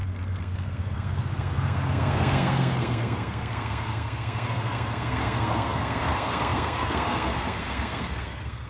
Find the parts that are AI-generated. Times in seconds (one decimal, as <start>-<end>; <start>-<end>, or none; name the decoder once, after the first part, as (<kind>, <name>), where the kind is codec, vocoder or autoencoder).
0.0-8.7 (codec, SNAC)